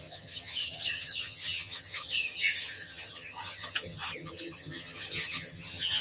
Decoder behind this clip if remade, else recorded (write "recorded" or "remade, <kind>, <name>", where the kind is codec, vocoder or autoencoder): remade, vocoder, HiFi-GAN